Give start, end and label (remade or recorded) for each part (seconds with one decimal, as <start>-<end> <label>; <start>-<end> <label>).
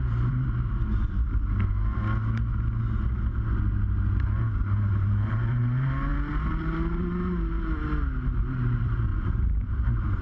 0.0-0.9 remade; 0.9-4.9 recorded; 4.9-6.1 remade; 6.1-8.0 recorded; 8.0-10.2 remade